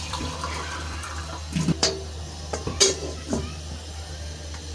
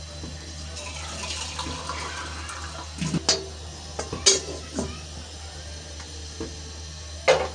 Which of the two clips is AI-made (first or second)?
first